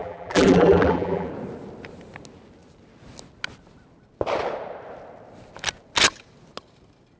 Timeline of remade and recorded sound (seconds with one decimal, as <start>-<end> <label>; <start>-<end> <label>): 0.0-1.3 remade; 1.3-7.2 recorded